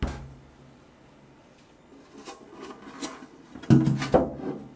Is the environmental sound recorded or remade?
recorded